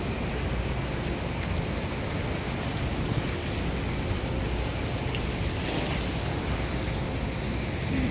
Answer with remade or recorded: recorded